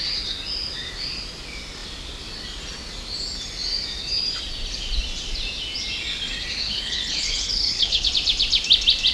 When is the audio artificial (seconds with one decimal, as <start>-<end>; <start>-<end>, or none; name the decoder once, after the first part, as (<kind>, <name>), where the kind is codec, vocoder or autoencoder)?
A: 6.6-8.1 (codec, HILCodec)